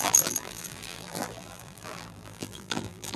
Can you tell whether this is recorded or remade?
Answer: remade